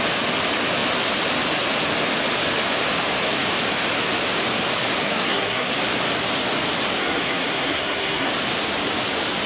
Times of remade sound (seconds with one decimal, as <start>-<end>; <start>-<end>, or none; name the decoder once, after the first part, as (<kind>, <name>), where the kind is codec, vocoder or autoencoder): 5.0-5.7 (codec, SNAC); 7.0-8.3